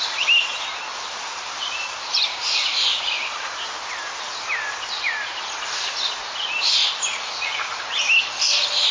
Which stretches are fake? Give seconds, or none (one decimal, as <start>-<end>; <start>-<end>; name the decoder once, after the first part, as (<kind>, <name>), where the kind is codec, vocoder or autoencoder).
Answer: 0.9-3.0 (vocoder, BigVGAN v2)